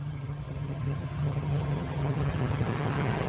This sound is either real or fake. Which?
fake